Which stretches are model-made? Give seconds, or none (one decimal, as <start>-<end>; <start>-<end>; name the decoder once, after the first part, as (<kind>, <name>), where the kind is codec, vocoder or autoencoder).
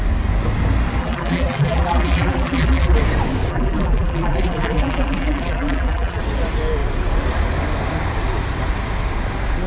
1.0-3.0 (vocoder, BigVGAN v2); 3.5-6.2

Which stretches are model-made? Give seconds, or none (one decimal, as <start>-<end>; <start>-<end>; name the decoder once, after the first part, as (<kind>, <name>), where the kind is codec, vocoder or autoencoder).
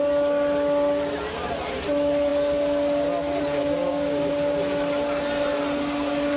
3.8-4.3 (codec, DAC)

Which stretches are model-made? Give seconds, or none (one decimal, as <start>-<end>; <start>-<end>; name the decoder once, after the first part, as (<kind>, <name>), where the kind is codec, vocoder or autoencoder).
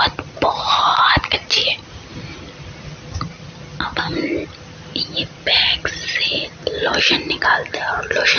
none